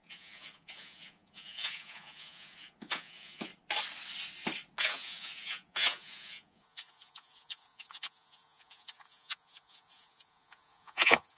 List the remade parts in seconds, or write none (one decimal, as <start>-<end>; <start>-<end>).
0.0-3.5; 4.8-11.4